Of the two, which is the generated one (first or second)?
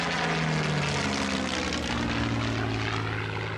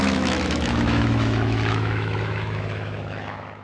second